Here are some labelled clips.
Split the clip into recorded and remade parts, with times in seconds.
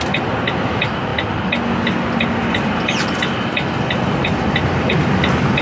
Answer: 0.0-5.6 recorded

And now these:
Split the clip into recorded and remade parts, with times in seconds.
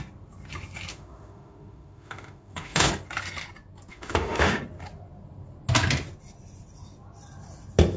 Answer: 0.0-0.9 recorded; 0.9-2.9 remade; 2.9-3.9 recorded; 3.9-4.6 remade; 4.6-8.0 recorded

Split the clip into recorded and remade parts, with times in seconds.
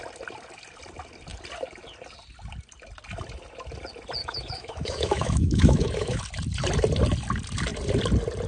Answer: 0.0-4.2 recorded; 4.2-6.2 remade; 6.2-8.5 recorded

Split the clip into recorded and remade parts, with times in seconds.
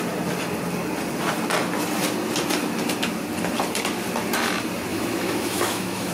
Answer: 0.0-4.9 recorded; 4.9-6.1 remade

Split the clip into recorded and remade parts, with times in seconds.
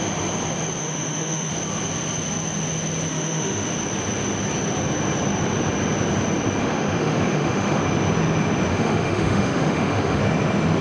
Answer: 0.0-0.8 recorded; 0.8-1.5 remade; 1.5-3.1 recorded; 3.1-3.7 remade; 3.7-6.6 recorded; 6.6-7.8 remade; 7.8-8.7 recorded; 8.7-10.2 remade; 10.2-10.8 recorded